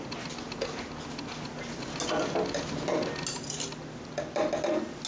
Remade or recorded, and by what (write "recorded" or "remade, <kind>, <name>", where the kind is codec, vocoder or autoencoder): recorded